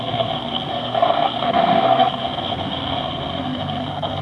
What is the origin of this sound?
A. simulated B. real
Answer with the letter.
A